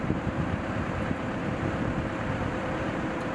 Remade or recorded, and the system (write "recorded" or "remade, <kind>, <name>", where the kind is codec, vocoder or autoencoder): remade, vocoder, BigVGAN v2